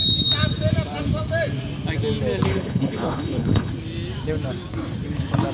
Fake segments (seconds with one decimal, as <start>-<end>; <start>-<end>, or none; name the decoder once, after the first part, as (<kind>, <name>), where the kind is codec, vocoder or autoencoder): 2.5-3.7 (codec, HILCodec)